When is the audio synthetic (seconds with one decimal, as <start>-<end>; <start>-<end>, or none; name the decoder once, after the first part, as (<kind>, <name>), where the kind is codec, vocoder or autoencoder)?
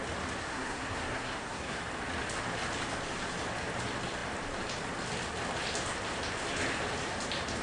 0.4-1.8 (codec, SNAC)